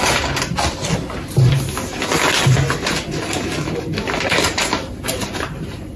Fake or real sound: real